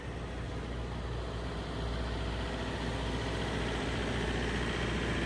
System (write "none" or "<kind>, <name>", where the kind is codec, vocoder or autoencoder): none